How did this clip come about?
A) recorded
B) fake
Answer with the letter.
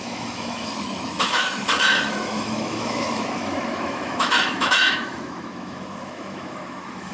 B